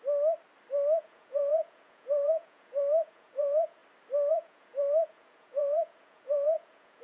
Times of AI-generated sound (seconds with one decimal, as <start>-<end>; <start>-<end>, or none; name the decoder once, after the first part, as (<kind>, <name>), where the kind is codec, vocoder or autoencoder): 1.0-3.8 (vocoder, Vocos); 4.3-7.0